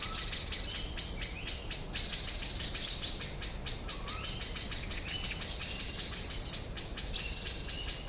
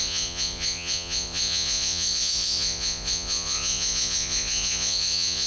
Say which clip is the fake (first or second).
second